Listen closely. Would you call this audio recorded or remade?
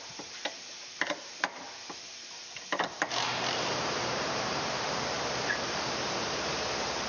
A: remade